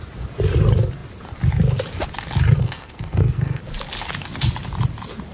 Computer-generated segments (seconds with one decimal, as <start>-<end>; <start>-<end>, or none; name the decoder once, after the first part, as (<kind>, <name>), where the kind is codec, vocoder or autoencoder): 2.6-3.6 (codec, SNAC)